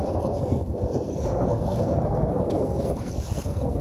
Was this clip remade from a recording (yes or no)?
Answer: yes